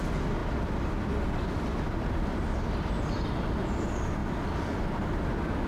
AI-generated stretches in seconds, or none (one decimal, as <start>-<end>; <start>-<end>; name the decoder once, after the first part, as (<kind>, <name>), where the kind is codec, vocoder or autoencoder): none